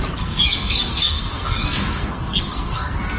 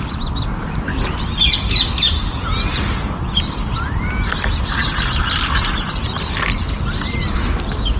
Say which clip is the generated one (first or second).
first